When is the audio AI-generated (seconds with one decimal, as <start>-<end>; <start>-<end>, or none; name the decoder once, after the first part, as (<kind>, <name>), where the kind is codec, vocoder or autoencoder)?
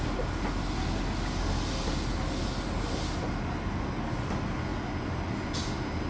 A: none